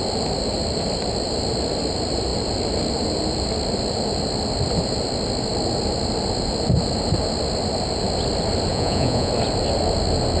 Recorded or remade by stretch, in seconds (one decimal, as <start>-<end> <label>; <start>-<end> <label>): 0.0-8.7 recorded; 8.7-9.3 remade; 9.3-10.4 recorded